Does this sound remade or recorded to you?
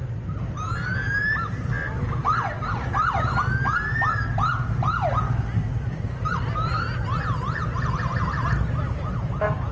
recorded